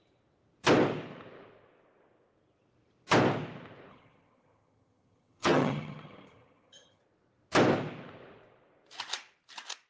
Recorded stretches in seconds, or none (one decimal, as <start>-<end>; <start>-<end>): 0.0-3.9; 7.0-9.9